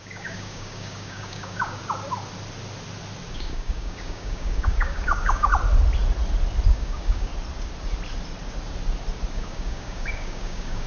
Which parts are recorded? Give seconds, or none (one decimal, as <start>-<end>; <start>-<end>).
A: 1.8-3.3; 5.5-6.7; 7.3-9.3